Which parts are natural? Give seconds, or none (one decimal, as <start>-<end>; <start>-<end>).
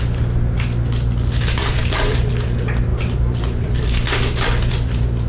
0.0-1.6; 2.3-2.9; 3.8-5.3